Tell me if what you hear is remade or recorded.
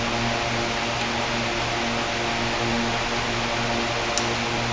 recorded